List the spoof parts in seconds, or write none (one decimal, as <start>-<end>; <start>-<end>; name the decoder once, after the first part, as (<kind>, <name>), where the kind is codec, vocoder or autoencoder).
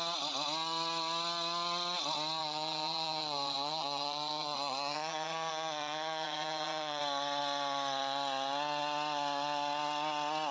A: 2.4-7.0 (vocoder, Vocos)